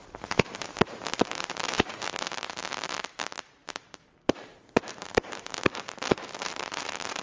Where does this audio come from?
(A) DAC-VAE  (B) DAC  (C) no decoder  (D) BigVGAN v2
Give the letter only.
D